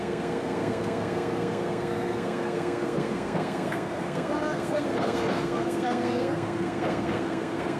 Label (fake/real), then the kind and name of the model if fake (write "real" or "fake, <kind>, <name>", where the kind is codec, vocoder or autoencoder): fake, codec, SNAC